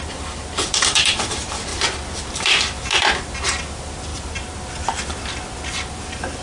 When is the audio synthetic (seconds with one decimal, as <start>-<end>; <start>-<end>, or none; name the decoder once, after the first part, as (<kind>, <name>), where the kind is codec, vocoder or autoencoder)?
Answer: 1.7-3.1 (vocoder, BigVGAN v2); 4.1-6.4